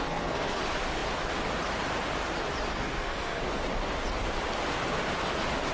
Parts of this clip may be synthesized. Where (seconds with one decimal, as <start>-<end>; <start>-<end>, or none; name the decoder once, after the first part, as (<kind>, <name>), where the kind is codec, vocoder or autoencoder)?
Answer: 0.0-0.6 (codec, SNAC); 2.7-3.4